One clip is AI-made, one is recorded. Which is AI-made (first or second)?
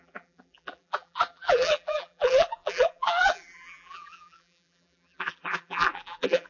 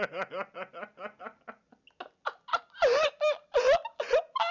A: first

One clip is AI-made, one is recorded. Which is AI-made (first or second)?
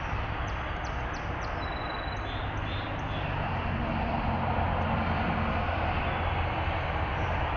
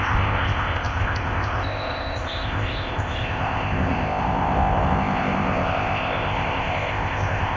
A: second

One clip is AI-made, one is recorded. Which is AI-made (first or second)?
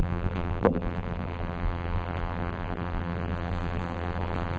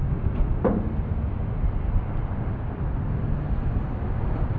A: first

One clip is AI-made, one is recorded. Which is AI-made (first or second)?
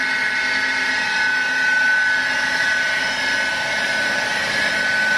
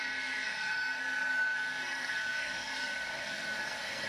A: second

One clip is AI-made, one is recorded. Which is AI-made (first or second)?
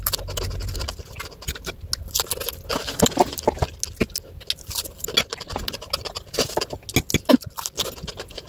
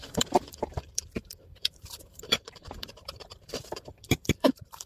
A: second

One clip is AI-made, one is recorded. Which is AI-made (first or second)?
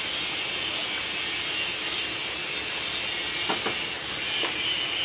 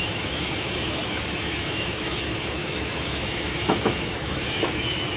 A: second